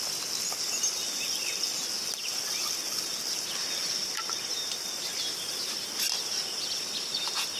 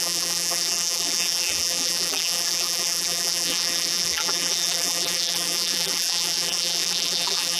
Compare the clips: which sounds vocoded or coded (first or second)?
second